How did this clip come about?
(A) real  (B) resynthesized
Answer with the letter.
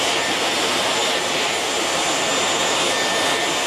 A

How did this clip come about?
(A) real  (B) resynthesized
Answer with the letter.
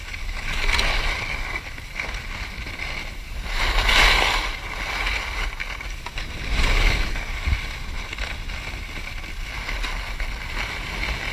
A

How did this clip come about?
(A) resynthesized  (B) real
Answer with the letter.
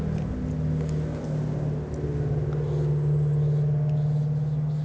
B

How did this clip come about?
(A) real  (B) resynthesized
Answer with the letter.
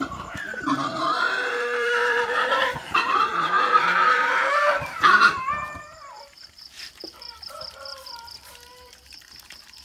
B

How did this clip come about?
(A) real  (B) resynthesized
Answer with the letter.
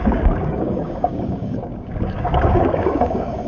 B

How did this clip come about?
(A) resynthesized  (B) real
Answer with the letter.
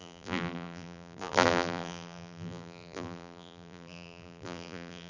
A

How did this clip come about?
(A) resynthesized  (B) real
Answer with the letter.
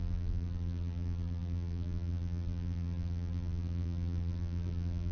A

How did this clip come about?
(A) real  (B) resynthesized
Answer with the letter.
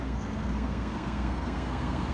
B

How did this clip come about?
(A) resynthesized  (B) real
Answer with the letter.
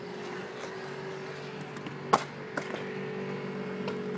B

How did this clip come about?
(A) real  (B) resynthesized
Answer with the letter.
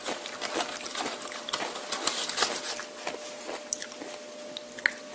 A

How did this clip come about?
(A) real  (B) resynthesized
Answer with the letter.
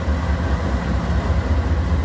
A